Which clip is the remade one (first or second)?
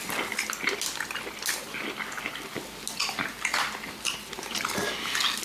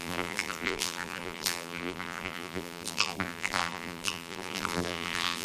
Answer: second